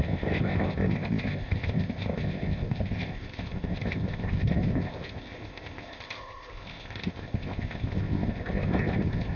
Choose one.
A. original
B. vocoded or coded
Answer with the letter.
B